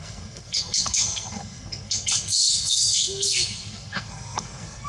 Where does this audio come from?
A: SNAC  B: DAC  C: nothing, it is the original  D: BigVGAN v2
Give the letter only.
A